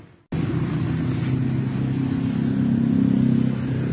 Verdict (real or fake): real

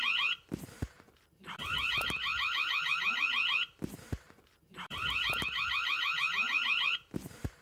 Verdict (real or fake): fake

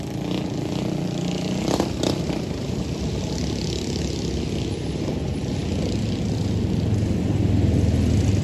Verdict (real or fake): real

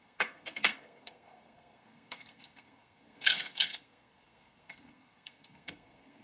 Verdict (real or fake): fake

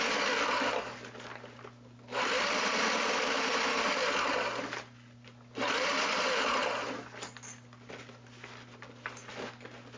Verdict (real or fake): real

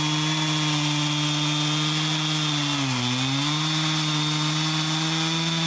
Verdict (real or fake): real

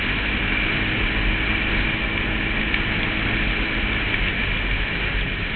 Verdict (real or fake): real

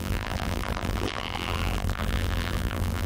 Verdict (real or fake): fake